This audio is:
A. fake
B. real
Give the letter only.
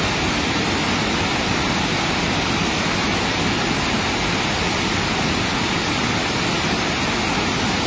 B